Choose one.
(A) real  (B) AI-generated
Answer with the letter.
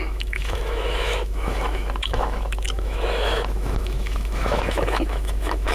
B